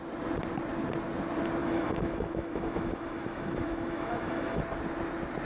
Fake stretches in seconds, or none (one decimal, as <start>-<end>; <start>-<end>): 1.6-4.6